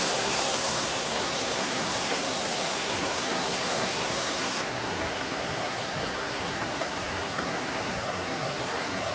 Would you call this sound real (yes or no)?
no